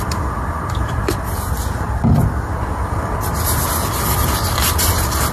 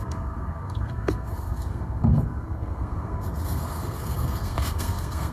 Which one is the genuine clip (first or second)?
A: first